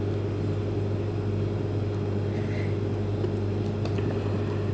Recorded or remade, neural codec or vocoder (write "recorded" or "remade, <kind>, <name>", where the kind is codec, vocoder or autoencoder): recorded